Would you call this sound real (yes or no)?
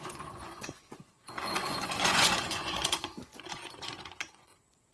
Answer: no